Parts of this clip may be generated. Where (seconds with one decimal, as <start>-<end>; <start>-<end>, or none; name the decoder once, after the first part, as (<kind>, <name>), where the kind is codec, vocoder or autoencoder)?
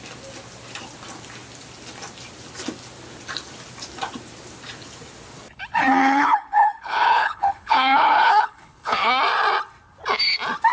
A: 6.0-9.1 (codec, HILCodec)